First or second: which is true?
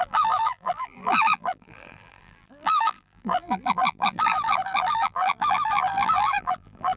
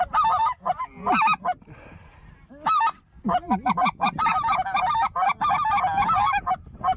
second